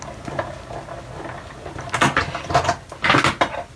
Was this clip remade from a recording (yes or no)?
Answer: no